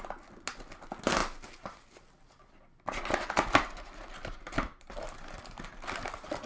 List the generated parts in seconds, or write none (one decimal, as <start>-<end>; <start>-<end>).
none